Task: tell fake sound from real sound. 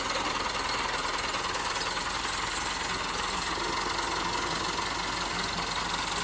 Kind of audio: real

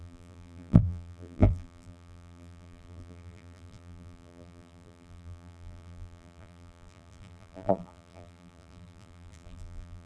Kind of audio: fake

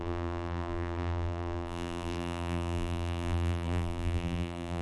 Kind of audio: fake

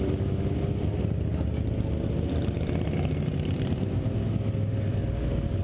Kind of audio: real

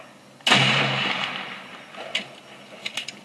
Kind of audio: real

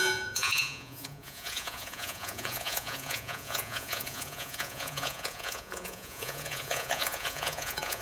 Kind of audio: fake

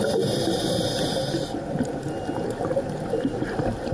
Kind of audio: real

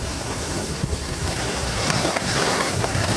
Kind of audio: fake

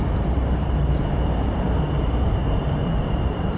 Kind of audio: fake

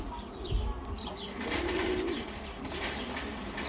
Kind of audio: real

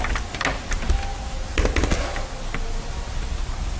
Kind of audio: real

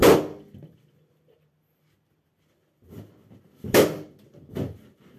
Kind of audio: real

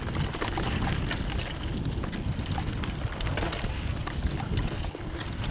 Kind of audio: real